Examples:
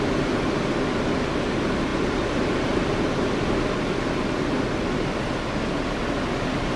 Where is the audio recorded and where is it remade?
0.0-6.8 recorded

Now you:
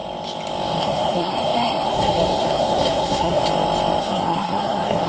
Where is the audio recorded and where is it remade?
0.0-0.8 recorded; 0.8-3.4 remade; 3.4-4.0 recorded; 4.0-5.1 remade

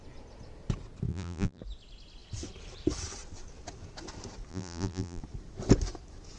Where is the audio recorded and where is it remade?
0.0-1.1 recorded; 1.1-1.6 remade; 1.6-4.5 recorded; 4.5-5.2 remade; 5.2-6.4 recorded

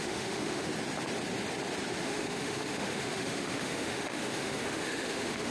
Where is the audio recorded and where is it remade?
0.0-0.7 remade; 0.7-2.0 recorded; 2.0-5.5 remade

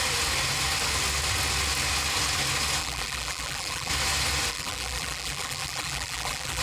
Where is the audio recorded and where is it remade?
0.0-2.8 recorded; 2.8-3.9 remade; 3.9-4.5 recorded; 4.5-6.6 remade

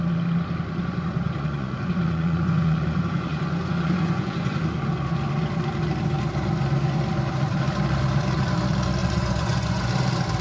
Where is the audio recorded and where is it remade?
0.0-0.8 recorded; 0.8-4.6 remade; 4.6-9.0 recorded; 9.0-9.9 remade; 9.9-10.4 recorded

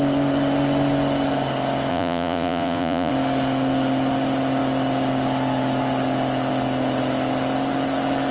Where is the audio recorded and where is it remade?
0.0-1.9 recorded; 1.9-3.1 remade; 3.1-8.3 recorded

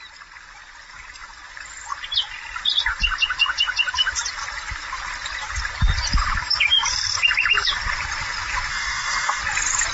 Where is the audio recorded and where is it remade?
0.0-8.7 recorded; 8.7-9.4 remade; 9.4-9.9 recorded